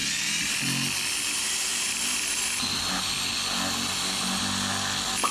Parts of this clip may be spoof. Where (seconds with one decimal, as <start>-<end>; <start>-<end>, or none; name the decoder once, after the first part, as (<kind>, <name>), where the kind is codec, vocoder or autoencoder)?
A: 1.7-2.8 (vocoder, BigVGAN v2)